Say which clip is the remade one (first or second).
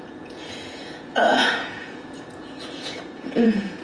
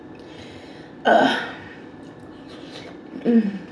first